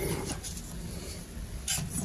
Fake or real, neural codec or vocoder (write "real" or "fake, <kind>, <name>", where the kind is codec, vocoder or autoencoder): real